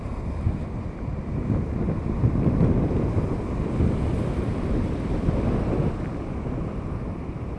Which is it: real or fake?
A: real